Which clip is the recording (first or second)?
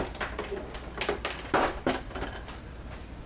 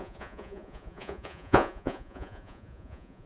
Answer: first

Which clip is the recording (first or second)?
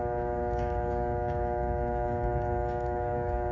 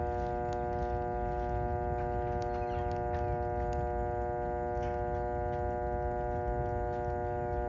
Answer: second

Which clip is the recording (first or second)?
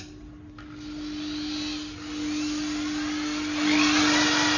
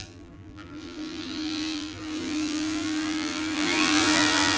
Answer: first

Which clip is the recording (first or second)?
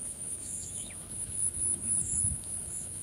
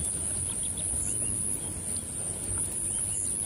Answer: second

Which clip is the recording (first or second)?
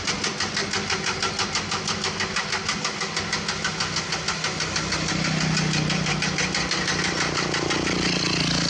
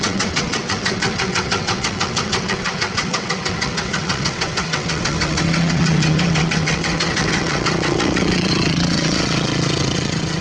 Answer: first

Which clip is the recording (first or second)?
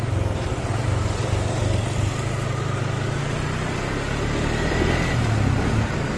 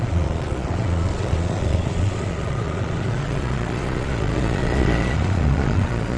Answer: first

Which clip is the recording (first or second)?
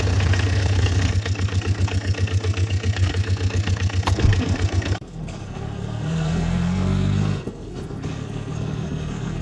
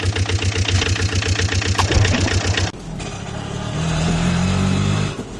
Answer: second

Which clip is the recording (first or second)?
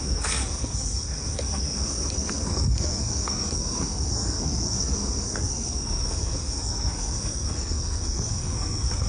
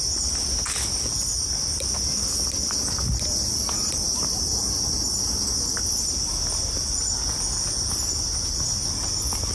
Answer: second